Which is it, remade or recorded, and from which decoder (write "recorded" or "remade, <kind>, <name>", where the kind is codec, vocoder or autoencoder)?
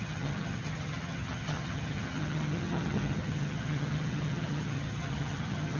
remade, vocoder, HiFi-GAN